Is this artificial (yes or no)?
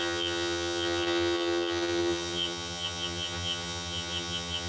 yes